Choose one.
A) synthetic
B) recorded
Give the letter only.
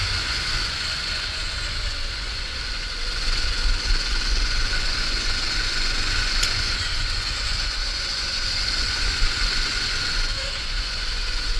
A